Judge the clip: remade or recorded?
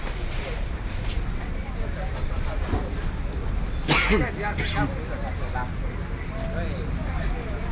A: recorded